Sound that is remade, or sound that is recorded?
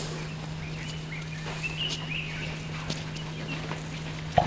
recorded